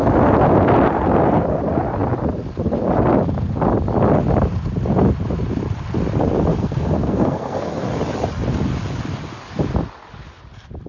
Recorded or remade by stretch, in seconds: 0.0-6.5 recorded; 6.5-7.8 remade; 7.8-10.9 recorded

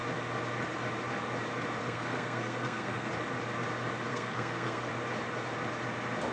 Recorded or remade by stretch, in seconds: 0.0-1.8 recorded; 1.8-3.1 remade; 3.1-4.1 recorded; 4.1-4.9 remade; 4.9-6.3 recorded

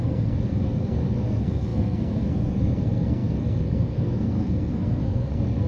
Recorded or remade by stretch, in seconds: 0.0-5.7 remade